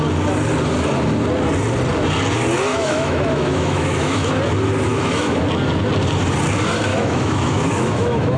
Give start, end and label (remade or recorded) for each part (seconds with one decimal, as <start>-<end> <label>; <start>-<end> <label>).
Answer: 0.0-2.7 recorded; 2.7-4.3 remade; 4.3-4.9 recorded; 4.9-5.4 remade; 5.4-6.9 recorded; 6.9-8.4 remade